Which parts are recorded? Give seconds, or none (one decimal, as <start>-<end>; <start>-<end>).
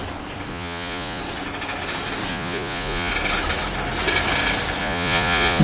0.0-0.5; 1.2-2.3; 3.1-4.8